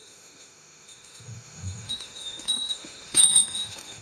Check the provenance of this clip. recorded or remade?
remade